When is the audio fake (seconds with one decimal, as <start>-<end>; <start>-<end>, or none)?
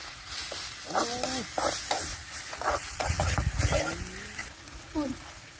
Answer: 0.0-0.5; 2.1-3.8; 4.4-5.6